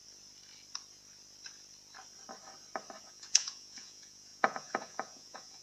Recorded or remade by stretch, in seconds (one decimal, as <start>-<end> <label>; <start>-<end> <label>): 0.0-3.0 recorded; 3.0-5.6 remade